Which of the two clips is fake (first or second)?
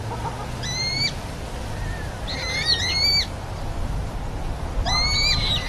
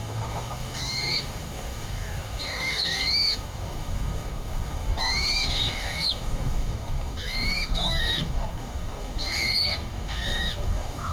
second